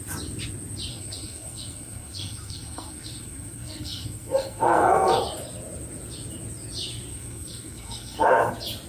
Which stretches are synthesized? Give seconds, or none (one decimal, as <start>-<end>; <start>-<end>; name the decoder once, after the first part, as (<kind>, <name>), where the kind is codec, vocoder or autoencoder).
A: 0.9-5.2 (codec, SNAC); 7.1-8.5

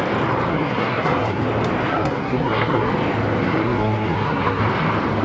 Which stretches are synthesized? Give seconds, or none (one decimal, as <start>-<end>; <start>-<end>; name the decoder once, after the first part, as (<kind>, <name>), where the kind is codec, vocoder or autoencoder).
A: 0.5-1.4 (codec, SNAC); 1.9-2.9; 3.4-4.6

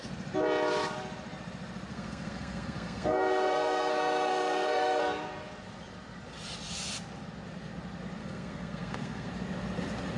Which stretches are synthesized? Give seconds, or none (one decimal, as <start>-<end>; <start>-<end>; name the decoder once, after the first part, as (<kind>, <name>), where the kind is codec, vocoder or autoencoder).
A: 1.9-5.0 (codec, SNAC); 8.2-9.3

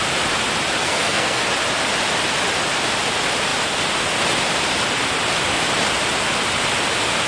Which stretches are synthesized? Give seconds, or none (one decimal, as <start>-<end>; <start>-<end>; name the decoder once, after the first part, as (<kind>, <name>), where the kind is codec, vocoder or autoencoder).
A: 0.8-1.4 (codec, SNAC)